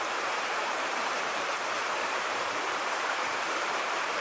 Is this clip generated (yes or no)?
yes